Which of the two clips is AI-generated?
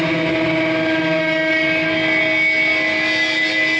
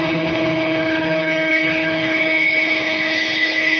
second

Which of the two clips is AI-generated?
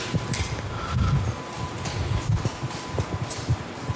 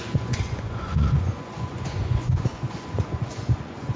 second